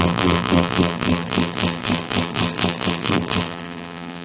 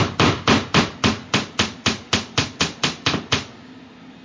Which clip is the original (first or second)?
second